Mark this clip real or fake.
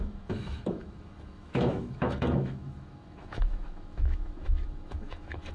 fake